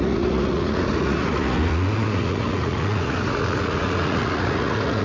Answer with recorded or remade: remade